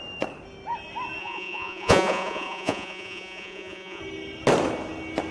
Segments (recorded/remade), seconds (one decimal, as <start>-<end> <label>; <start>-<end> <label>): 0.0-1.2 recorded; 1.2-4.0 remade; 4.0-5.3 recorded